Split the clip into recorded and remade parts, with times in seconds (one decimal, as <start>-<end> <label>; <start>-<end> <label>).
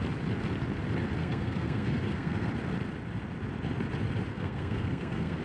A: 0.0-1.2 recorded; 1.2-2.5 remade; 2.5-4.3 recorded; 4.3-5.4 remade